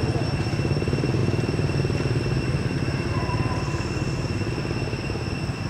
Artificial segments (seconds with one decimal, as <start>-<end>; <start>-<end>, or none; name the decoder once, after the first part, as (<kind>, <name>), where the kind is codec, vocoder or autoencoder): 0.0-5.7 (vocoder, BigVGAN v2)